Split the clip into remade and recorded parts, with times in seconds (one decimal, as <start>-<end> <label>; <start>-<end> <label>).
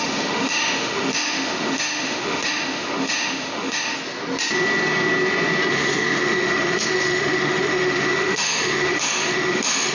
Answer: 0.0-3.9 remade; 3.9-5.7 recorded; 5.7-9.9 remade